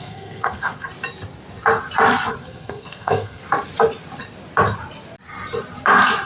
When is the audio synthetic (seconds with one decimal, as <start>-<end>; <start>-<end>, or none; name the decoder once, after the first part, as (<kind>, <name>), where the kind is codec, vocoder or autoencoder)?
0.0-0.9 (codec, SNAC); 2.4-3.4